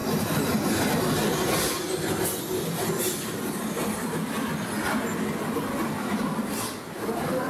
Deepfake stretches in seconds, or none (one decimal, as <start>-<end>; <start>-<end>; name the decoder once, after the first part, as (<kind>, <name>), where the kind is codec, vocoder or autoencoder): none